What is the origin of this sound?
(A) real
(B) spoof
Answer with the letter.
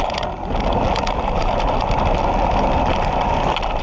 A